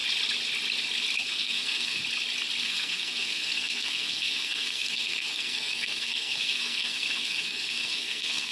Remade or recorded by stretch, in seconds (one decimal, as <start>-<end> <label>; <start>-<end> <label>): 0.0-1.2 recorded; 1.2-2.0 remade; 2.0-2.6 recorded; 2.6-8.5 remade